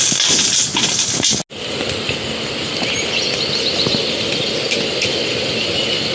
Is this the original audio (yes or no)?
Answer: yes